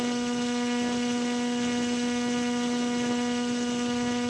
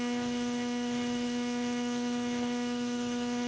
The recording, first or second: first